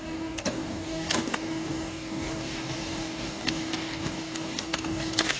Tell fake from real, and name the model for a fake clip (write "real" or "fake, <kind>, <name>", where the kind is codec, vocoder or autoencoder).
fake, codec, DAC